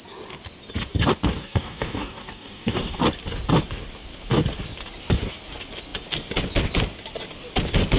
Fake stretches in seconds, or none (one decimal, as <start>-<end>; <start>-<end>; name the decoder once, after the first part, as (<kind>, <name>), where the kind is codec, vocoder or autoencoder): 1.4-3.0 (codec, DAC)